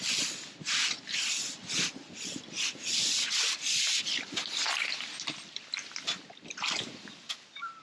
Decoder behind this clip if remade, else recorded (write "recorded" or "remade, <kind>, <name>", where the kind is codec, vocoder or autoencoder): recorded